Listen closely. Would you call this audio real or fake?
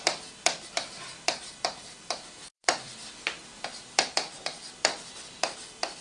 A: fake